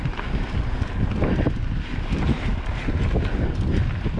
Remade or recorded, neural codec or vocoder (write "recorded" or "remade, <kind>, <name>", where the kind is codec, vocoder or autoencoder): recorded